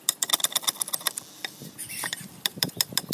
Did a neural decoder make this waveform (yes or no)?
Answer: no